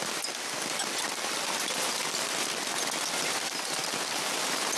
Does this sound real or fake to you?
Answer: real